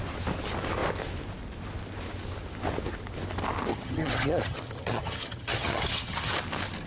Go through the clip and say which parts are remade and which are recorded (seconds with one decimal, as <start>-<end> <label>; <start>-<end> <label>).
0.0-3.7 recorded; 3.7-6.3 remade; 6.3-6.9 recorded